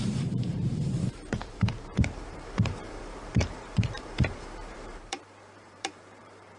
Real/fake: fake